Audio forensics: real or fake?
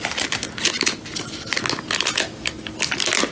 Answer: real